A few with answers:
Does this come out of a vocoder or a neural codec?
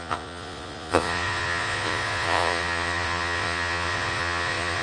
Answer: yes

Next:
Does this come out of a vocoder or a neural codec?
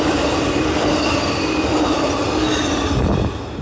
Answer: no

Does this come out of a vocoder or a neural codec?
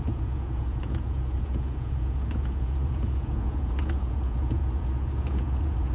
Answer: yes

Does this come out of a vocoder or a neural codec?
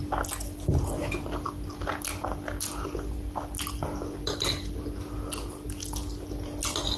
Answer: no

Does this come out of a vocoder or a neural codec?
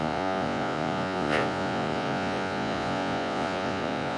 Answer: yes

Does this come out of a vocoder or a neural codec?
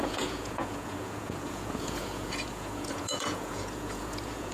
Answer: yes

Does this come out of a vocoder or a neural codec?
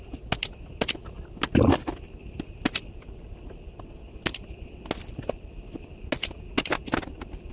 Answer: no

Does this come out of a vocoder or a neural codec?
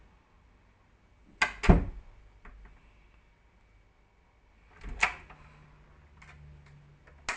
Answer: no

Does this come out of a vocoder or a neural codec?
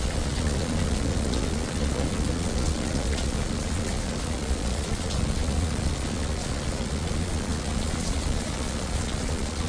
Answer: yes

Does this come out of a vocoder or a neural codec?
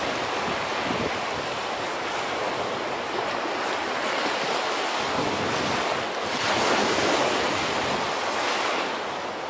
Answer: no